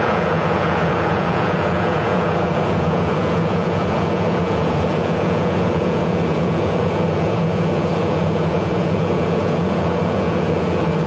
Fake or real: fake